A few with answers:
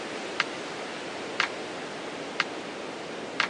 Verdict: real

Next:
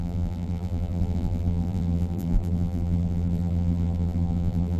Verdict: fake